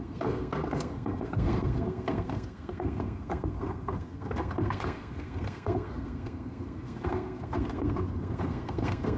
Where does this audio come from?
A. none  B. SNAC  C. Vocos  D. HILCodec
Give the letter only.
B